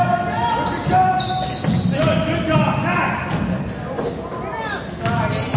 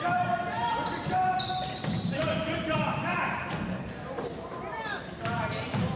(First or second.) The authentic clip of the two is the first